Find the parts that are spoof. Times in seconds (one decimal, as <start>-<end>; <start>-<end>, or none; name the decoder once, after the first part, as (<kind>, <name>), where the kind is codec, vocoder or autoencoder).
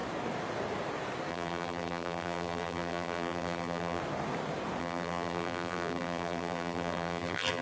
1.3-4.0 (vocoder, BigVGAN v2); 4.8-7.6